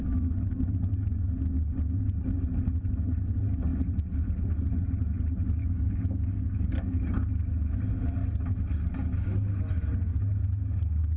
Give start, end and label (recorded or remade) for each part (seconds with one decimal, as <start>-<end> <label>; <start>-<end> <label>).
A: 0.0-5.6 recorded; 5.6-7.0 remade; 7.0-11.2 recorded